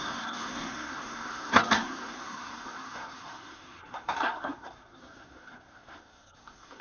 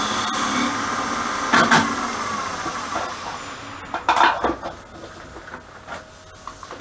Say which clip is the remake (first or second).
first